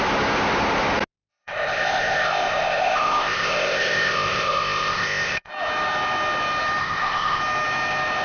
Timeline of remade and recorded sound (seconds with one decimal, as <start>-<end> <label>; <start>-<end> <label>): 0.0-1.3 recorded; 1.3-5.5 remade; 5.5-6.8 recorded; 6.8-7.4 remade; 7.4-8.2 recorded